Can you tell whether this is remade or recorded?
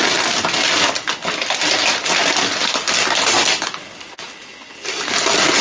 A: recorded